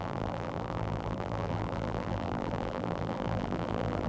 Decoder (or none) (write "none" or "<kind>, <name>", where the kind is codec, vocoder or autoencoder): vocoder, BigVGAN v2